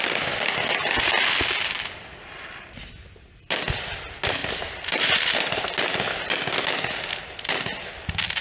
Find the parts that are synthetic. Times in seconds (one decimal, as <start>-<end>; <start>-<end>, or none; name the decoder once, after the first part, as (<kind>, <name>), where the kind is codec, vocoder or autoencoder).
4.4-5.6 (vocoder, BigVGAN v2)